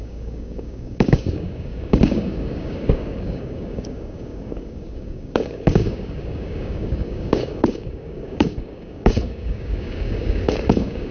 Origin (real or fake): fake